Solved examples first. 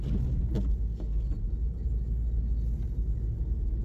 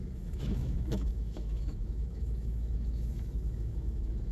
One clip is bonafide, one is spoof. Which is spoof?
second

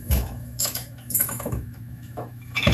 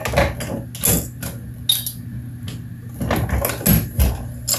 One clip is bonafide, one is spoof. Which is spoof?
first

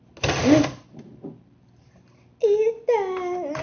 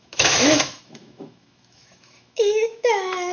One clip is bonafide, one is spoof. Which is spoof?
second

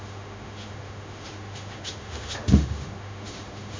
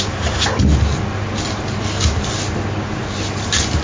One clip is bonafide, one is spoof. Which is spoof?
first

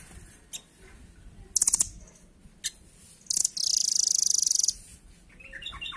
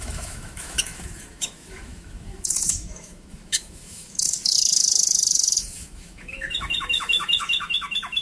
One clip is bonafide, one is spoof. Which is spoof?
second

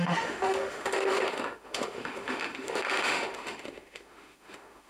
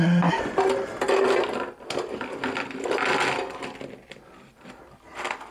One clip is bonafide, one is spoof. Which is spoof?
first